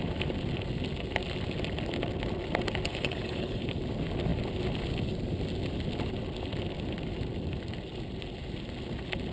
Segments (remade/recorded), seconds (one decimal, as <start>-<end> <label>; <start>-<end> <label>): 0.0-2.9 recorded; 2.9-3.6 remade; 3.6-9.3 recorded